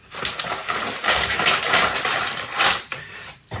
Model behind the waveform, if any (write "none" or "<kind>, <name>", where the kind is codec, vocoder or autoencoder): vocoder, BigVGAN v2